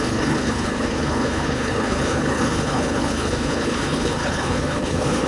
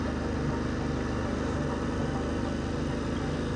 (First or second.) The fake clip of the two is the first